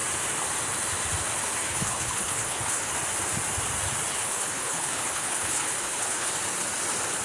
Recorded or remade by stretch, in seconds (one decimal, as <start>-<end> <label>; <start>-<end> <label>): 0.0-1.6 recorded; 1.6-2.9 remade; 2.9-4.1 recorded; 4.1-6.3 remade; 6.3-7.2 recorded